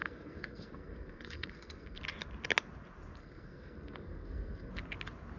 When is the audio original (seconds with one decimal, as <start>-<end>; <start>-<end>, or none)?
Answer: 2.0-3.2; 4.7-5.4